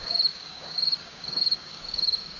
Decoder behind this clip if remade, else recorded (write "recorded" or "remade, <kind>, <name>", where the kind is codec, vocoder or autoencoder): remade, codec, DAC